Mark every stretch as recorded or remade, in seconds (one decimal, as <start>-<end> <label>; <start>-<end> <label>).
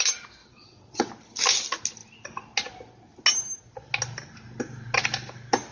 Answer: 0.0-0.4 recorded; 0.4-1.1 remade; 1.1-5.7 recorded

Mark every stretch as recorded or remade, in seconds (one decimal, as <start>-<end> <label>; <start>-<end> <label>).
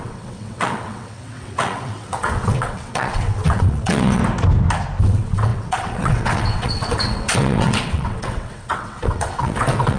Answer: 0.0-4.2 remade; 4.2-5.0 recorded; 5.0-10.0 remade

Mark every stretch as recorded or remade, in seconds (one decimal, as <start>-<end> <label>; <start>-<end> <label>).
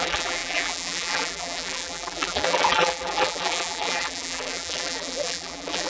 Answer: 0.0-5.9 remade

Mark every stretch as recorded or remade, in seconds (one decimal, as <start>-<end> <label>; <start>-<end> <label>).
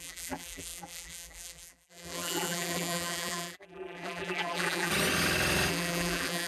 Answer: 0.0-4.9 remade; 4.9-5.7 recorded; 5.7-6.5 remade